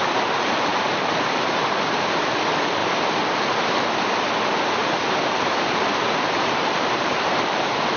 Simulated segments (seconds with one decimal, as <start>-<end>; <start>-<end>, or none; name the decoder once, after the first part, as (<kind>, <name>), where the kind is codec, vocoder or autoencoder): 0.7-2.2 (vocoder, BigVGAN v2); 2.8-3.8; 4.8-8.0